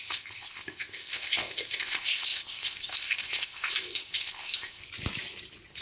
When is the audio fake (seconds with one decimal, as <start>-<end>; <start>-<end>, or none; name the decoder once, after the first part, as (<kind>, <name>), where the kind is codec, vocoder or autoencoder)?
0.0-4.8 (codec, ZipCodec)